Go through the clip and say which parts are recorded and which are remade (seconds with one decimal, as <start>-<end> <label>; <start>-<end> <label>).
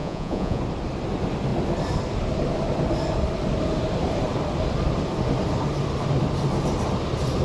0.0-0.6 remade; 0.6-7.4 recorded